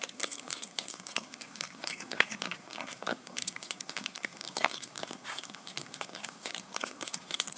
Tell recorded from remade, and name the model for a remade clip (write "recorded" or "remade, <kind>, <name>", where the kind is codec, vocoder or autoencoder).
remade, codec, SNAC